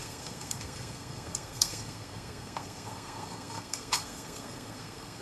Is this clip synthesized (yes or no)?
yes